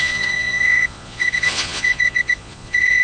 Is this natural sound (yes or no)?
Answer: no